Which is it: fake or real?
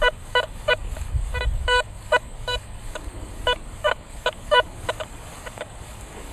fake